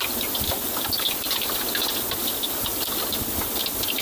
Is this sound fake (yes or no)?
no